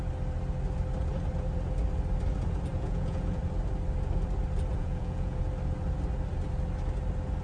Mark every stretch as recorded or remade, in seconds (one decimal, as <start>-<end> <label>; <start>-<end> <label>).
0.0-2.7 recorded; 2.7-3.4 remade; 3.4-4.7 recorded; 4.7-5.4 remade; 5.4-7.4 recorded